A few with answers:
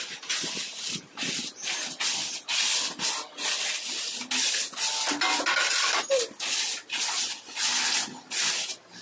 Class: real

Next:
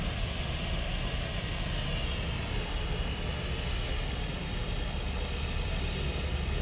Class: real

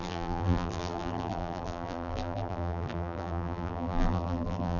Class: fake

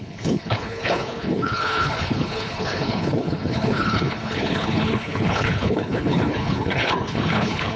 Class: fake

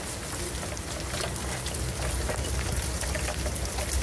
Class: real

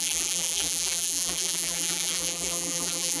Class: fake